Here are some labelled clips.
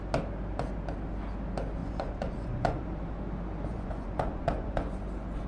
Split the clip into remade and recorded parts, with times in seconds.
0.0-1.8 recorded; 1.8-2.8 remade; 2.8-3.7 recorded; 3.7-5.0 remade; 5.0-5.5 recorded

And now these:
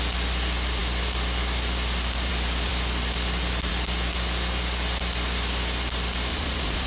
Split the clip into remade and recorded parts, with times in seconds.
0.0-6.3 recorded; 6.3-6.9 remade